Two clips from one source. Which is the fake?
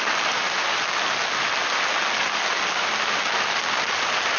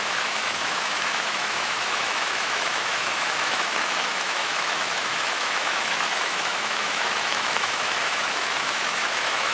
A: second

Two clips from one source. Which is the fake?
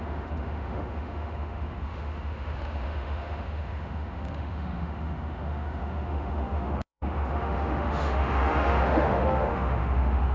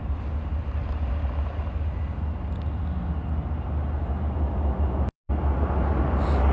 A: first